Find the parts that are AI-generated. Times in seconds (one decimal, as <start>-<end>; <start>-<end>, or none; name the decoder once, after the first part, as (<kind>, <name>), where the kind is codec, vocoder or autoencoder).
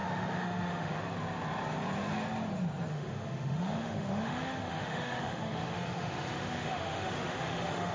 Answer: 0.0-1.0 (autoencoder, DAC-VAE); 2.9-7.9